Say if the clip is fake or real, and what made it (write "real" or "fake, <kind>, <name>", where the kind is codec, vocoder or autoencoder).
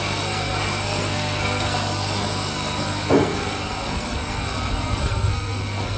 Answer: fake, codec, SNAC